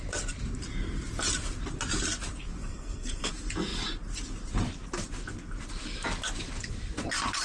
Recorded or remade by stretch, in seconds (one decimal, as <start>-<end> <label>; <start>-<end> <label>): 0.0-2.6 recorded; 2.6-3.3 remade; 3.3-7.4 recorded